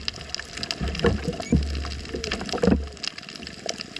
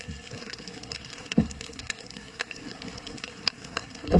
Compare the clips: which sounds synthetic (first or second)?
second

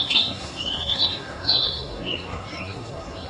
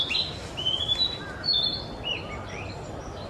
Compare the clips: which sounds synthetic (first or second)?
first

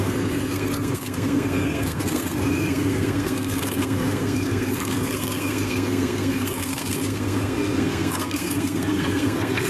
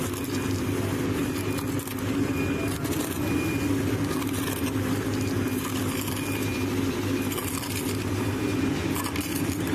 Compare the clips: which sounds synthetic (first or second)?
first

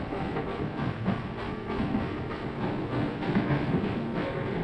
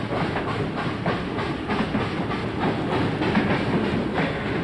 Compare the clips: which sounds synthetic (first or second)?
first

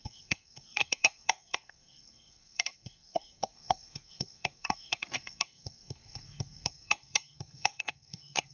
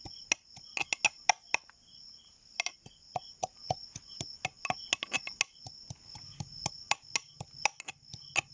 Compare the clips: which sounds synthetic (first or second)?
first